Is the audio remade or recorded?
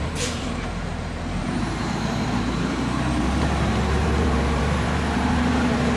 remade